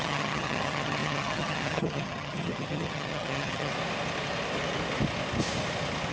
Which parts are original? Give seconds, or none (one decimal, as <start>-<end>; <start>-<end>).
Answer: 3.7-6.1